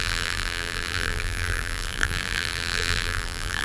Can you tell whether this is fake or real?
fake